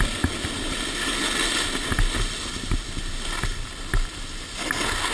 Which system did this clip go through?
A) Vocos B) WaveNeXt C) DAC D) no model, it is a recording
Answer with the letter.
D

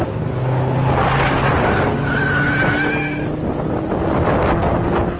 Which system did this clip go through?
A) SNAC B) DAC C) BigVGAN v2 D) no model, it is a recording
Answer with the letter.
D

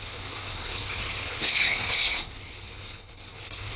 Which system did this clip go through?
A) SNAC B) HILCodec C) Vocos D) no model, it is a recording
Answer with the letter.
B